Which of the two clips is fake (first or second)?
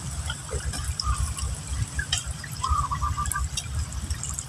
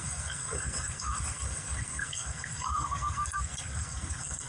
second